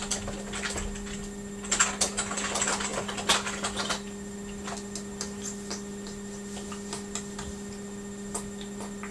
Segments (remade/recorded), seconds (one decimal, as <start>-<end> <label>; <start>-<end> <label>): 0.0-9.1 recorded